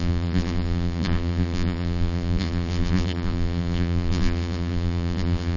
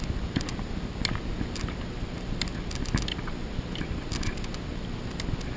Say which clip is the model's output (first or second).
first